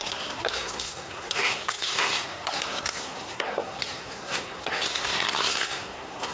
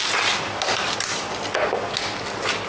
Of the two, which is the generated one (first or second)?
first